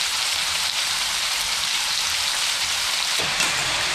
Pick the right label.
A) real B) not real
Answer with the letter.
B